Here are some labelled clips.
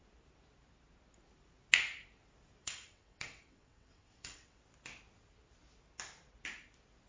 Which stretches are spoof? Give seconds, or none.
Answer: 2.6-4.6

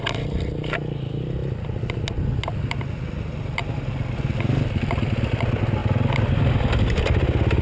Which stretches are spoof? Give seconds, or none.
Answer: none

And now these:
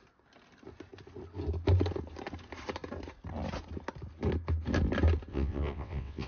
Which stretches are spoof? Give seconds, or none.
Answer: 5.3-6.3

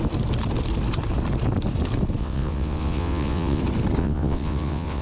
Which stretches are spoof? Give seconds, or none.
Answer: 2.2-3.6; 4.0-5.0

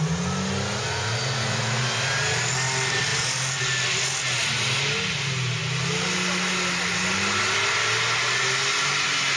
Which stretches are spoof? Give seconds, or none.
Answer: none